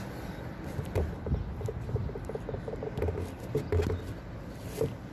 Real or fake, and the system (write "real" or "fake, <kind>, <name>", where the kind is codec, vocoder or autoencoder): real